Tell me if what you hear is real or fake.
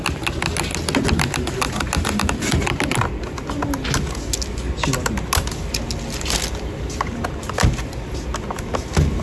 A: real